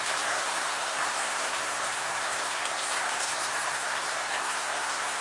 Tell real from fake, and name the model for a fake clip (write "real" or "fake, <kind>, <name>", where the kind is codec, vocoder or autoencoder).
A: fake, codec, SNAC